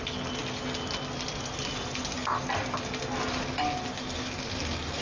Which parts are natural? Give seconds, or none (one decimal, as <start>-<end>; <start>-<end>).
0.0-5.0